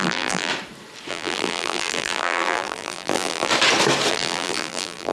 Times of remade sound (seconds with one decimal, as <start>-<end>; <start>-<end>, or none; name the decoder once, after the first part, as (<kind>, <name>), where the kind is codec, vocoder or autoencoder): 0.0-0.5 (vocoder, BigVGAN v2); 1.1-3.5; 4.1-5.1